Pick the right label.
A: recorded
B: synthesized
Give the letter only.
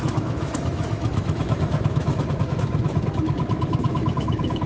B